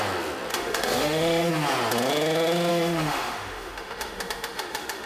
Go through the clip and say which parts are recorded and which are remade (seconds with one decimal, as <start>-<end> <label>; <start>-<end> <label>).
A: 0.0-0.5 recorded; 0.5-1.5 remade; 1.5-2.7 recorded; 2.7-5.1 remade